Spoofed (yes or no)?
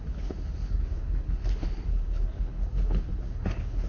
yes